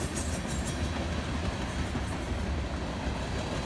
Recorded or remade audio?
recorded